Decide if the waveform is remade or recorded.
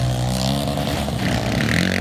recorded